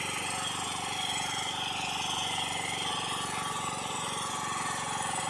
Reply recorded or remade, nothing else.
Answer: remade